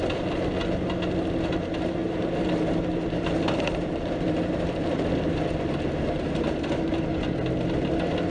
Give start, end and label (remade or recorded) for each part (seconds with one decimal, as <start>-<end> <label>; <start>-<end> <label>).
0.0-2.0 recorded; 2.0-5.9 remade; 5.9-8.3 recorded